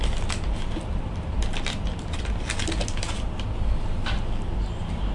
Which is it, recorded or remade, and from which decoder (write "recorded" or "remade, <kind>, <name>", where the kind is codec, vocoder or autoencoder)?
recorded